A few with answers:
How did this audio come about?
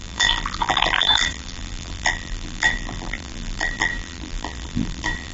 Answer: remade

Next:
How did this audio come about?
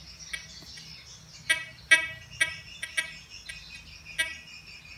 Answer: recorded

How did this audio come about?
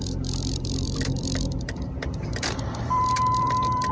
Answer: remade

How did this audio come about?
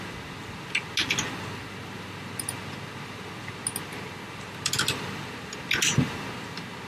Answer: recorded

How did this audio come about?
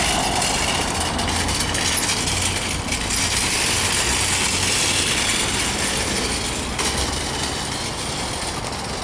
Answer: recorded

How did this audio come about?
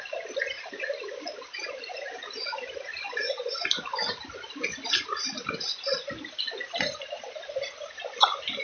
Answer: recorded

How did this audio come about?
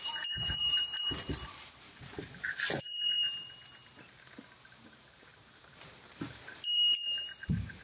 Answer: remade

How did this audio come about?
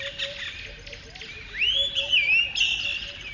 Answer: recorded